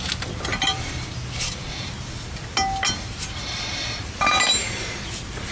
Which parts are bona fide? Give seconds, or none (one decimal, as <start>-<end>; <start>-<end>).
0.0-0.5; 1.7-4.0; 4.5-5.5